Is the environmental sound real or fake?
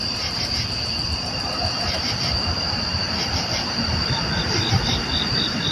real